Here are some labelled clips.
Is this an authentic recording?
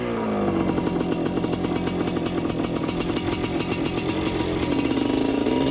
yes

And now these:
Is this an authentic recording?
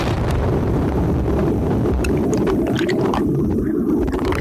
no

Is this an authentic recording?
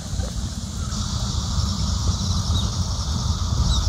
yes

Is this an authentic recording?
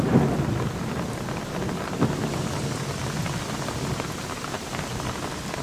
yes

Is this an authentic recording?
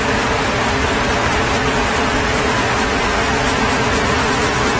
no